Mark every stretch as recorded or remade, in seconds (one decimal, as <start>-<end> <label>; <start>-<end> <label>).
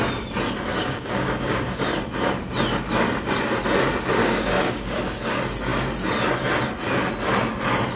0.0-0.7 recorded; 0.7-1.8 remade; 1.8-4.2 recorded; 4.2-5.0 remade; 5.0-8.0 recorded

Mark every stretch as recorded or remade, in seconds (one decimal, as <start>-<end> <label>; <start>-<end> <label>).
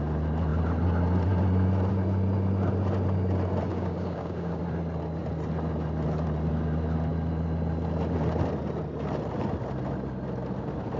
0.0-3.7 recorded; 3.7-4.6 remade; 4.6-11.0 recorded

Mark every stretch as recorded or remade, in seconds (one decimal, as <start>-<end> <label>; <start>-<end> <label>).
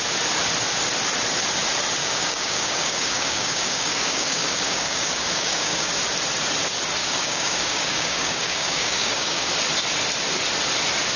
0.0-2.0 recorded; 2.0-5.9 remade; 5.9-7.0 recorded; 7.0-9.5 remade; 9.5-11.2 recorded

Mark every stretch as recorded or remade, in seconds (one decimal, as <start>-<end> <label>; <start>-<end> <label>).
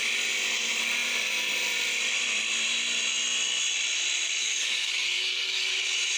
0.0-4.4 recorded; 4.4-5.7 remade; 5.7-6.2 recorded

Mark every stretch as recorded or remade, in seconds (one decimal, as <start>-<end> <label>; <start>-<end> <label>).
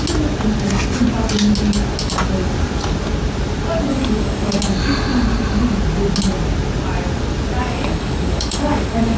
0.0-3.9 recorded; 3.9-4.6 remade; 4.6-7.6 recorded; 7.6-9.2 remade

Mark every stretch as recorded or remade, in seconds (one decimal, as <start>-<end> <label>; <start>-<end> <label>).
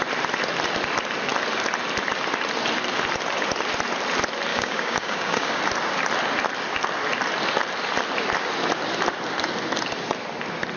0.0-4.5 recorded; 4.5-5.6 remade; 5.6-10.8 recorded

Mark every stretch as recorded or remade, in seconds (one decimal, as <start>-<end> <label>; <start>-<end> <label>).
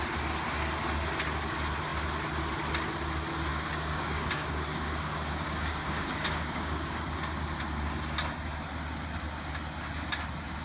0.0-3.5 recorded; 3.5-7.0 remade; 7.0-10.6 recorded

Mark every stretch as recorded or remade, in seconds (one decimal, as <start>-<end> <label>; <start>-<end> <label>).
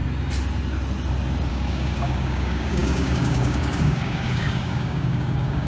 0.0-1.5 recorded; 1.5-5.7 remade